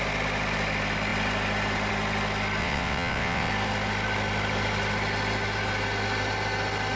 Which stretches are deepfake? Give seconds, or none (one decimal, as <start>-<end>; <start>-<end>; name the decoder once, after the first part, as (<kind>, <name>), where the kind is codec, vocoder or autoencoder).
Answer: 2.6-3.5 (vocoder, WaveNeXt)